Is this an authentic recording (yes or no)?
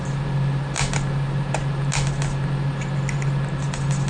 yes